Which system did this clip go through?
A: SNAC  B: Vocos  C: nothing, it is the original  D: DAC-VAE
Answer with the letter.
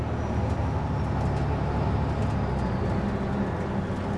C